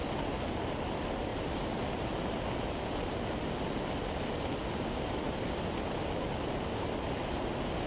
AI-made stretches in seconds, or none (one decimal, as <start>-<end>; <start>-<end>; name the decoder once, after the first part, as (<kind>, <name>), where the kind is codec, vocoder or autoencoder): none